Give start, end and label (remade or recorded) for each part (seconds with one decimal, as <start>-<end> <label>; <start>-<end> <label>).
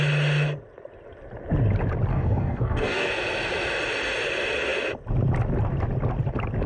0.0-2.1 recorded; 2.1-3.1 remade; 3.1-6.7 recorded